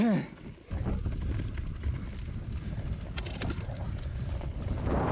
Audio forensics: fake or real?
real